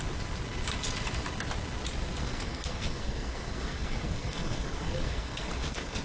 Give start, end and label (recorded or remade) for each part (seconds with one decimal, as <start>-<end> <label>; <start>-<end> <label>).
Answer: 0.0-2.2 recorded; 2.2-6.0 remade